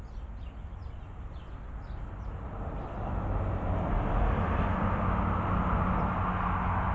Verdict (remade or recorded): recorded